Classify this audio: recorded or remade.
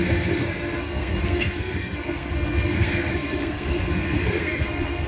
remade